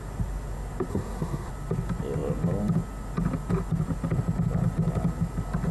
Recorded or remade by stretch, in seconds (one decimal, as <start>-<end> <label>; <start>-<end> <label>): 0.0-0.9 recorded; 0.9-1.5 remade; 1.5-5.7 recorded